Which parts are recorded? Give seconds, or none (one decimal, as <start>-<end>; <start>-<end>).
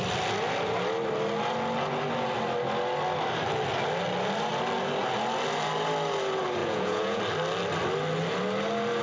0.0-6.6; 7.2-9.0